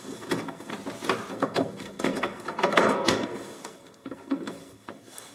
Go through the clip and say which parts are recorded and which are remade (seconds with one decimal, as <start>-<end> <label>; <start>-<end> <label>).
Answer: 0.0-0.7 remade; 0.7-1.3 recorded; 1.3-5.3 remade